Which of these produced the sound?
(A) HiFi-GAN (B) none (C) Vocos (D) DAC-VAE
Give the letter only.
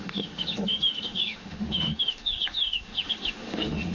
D